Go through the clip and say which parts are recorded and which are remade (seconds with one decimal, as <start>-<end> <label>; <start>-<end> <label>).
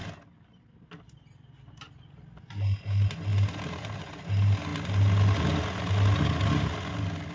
0.0-7.3 recorded